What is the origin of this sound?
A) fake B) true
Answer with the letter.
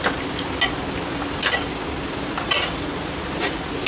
B